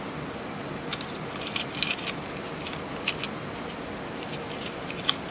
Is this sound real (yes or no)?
yes